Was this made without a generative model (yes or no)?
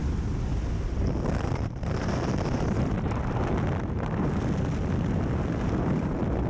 no